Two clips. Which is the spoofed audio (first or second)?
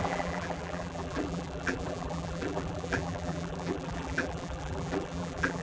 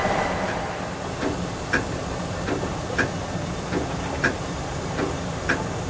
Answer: first